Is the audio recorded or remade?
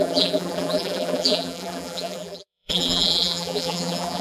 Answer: remade